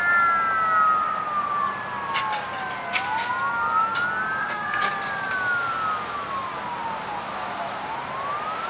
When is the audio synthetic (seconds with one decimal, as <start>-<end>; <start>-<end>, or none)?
4.4-4.9